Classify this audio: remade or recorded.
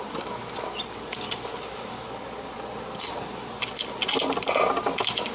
recorded